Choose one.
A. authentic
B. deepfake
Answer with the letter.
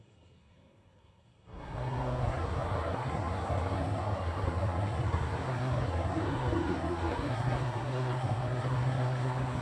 B